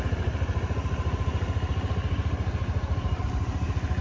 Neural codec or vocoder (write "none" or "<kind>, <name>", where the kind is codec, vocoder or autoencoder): none